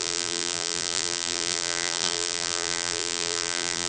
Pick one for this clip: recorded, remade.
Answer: remade